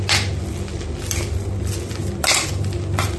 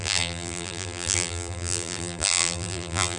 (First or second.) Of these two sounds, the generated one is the second